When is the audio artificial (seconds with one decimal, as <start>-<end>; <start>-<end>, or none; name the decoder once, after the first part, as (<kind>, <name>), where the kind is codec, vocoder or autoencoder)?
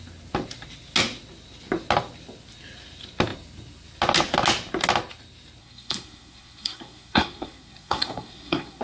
5.6-8.8 (codec, SNAC)